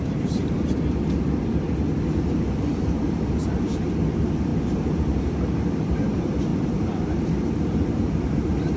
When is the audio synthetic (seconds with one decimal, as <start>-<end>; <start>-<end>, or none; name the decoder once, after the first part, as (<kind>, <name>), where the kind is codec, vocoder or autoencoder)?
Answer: 0.0-0.4 (vocoder, BigVGAN v2); 3.4-8.8